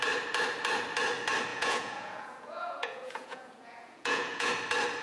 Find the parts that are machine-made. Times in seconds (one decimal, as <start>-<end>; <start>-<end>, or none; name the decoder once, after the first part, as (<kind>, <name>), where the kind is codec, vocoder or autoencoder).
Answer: 1.5-4.5 (vocoder, Vocos)